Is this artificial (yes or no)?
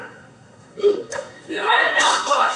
yes